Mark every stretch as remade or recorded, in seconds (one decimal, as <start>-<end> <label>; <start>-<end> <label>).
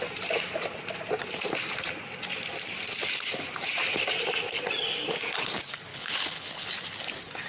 0.0-5.9 recorded; 5.9-6.7 remade; 6.7-7.5 recorded